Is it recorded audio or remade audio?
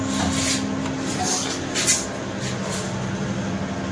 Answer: recorded